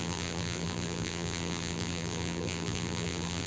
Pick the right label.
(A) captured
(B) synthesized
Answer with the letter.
B